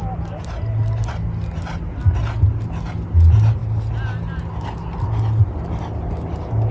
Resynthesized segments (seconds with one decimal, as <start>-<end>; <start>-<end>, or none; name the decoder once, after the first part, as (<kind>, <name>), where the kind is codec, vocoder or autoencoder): none